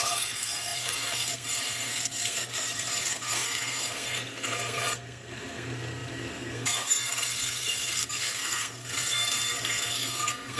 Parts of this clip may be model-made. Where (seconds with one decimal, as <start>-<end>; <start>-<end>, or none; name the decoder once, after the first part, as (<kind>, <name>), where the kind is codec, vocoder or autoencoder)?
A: 0.0-10.6 (codec, SNAC)